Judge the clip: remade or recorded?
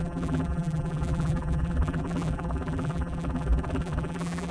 remade